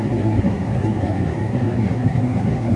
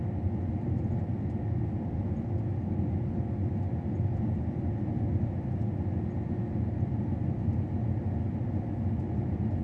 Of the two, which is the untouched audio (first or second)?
second